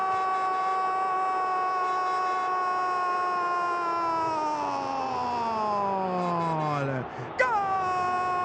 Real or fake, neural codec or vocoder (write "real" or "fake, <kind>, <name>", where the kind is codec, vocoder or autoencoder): real